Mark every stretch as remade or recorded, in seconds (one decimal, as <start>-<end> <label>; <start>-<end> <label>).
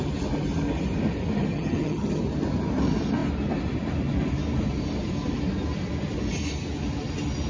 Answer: 0.0-1.5 recorded; 1.5-2.2 remade; 2.2-7.5 recorded